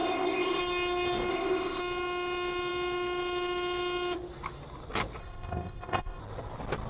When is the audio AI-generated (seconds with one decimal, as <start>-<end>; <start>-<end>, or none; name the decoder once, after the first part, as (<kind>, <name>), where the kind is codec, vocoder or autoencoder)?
0.0-0.6 (codec, ZipCodec); 1.3-1.8; 5.2-6.2